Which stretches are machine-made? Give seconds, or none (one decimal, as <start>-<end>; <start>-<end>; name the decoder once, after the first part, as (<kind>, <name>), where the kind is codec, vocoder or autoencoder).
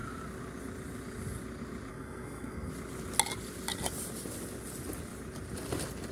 1.9-2.7 (codec, SNAC)